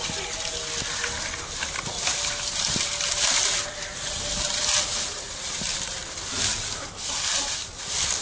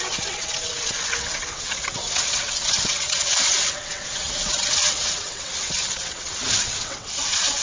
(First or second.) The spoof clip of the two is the second